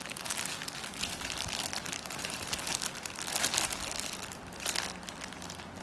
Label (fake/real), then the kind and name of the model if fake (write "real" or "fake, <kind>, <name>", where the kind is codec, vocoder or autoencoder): real